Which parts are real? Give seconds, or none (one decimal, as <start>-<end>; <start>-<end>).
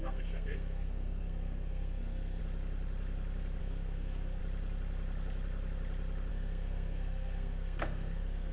2.4-3.6; 4.4-6.3